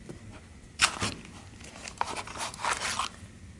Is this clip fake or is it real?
real